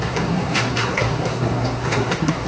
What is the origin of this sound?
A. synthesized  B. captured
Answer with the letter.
A